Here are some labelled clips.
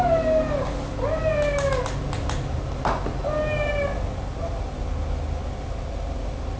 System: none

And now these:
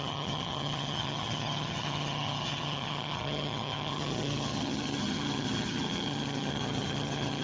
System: vocoder, HiFi-GAN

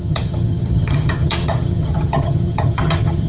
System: vocoder, HiFi-GAN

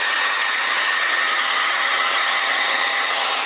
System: vocoder, HiFi-GAN